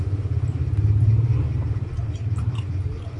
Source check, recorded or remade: recorded